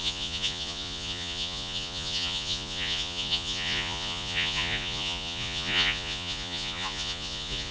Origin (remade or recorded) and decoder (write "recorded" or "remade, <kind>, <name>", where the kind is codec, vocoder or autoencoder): remade, vocoder, Vocos